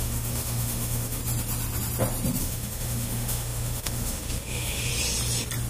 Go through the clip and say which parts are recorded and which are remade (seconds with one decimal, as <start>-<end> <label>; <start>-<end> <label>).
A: 0.0-1.2 remade; 1.2-2.4 recorded; 2.4-4.9 remade; 4.9-5.7 recorded